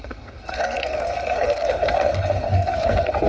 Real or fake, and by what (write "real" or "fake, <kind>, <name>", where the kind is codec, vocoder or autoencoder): fake, codec, SNAC